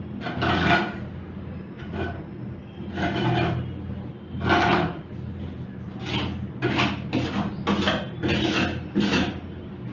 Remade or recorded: recorded